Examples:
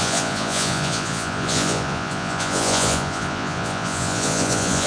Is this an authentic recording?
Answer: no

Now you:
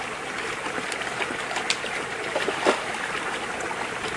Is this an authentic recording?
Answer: yes